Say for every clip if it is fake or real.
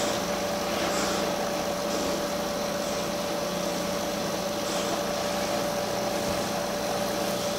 real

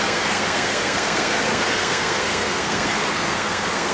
fake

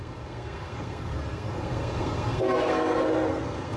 fake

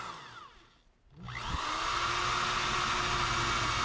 real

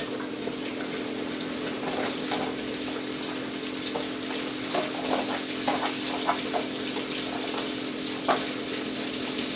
real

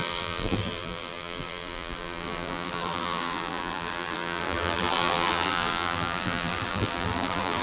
fake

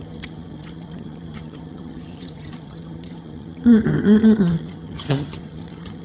fake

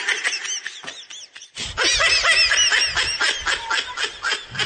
real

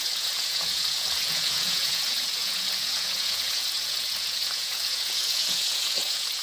fake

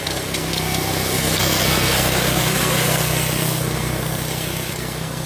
fake